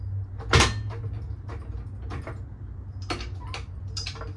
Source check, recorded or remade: recorded